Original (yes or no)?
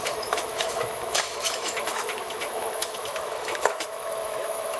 no